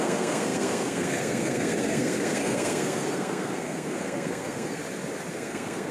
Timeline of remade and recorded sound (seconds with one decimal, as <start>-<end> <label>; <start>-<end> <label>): 0.0-4.8 remade; 4.8-5.3 recorded; 5.3-5.9 remade